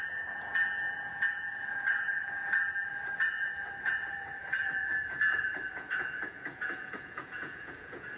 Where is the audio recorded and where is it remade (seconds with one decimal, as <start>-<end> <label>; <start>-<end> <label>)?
0.0-2.6 remade; 2.6-3.3 recorded; 3.3-8.2 remade